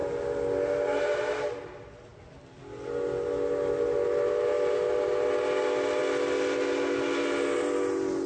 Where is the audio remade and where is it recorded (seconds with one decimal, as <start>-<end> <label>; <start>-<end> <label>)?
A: 0.0-8.3 recorded